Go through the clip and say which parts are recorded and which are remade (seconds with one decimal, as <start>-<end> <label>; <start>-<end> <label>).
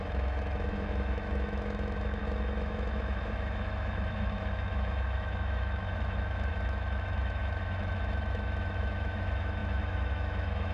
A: 0.0-10.7 remade